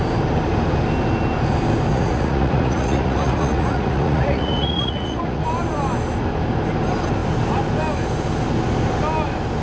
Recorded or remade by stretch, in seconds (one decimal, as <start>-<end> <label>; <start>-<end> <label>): 0.0-1.9 recorded; 1.9-5.4 remade; 5.4-9.6 recorded